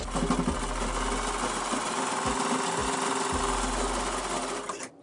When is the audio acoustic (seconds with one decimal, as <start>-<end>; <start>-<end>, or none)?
0.0-5.0